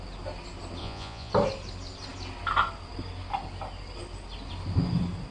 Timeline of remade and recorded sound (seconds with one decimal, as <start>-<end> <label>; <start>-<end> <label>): 0.0-0.8 recorded; 0.8-1.3 remade; 1.3-5.3 recorded